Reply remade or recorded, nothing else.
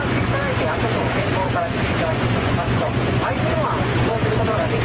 remade